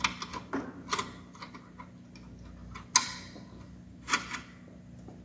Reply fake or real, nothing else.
real